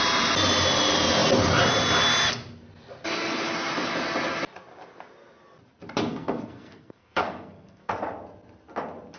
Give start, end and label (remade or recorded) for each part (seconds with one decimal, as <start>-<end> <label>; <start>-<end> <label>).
0.0-6.1 recorded; 6.1-7.9 remade; 7.9-9.2 recorded